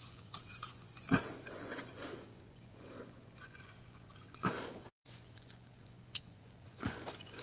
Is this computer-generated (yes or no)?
yes